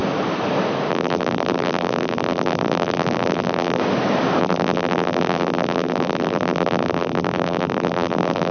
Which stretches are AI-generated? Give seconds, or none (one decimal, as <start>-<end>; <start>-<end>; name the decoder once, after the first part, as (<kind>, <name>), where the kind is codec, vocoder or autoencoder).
0.9-3.8 (vocoder, BigVGAN v2); 4.4-8.5